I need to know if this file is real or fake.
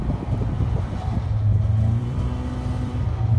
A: fake